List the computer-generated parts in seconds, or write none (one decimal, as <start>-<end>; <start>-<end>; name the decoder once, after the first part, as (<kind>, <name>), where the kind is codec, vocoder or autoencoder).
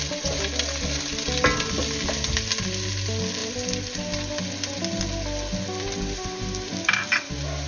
none